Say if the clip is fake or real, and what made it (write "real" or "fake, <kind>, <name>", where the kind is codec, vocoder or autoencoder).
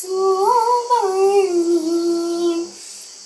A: real